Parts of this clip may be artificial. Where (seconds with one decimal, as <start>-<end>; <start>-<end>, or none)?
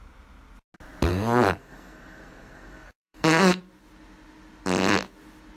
1.1-3.6